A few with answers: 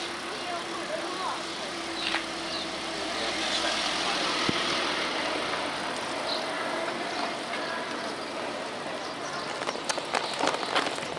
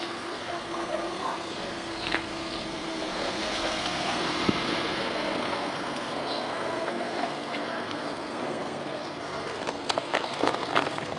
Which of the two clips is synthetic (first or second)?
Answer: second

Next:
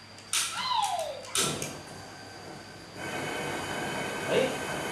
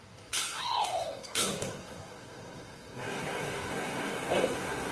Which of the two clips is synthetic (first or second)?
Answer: second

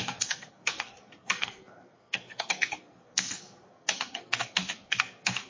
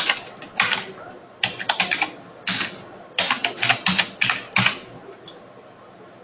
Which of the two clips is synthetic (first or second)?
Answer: first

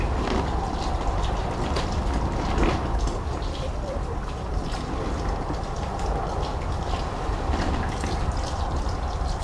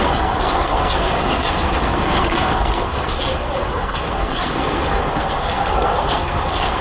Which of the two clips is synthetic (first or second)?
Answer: second